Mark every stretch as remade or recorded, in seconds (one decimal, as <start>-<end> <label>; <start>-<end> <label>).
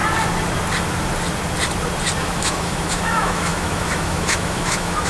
0.0-2.2 recorded; 2.2-5.1 remade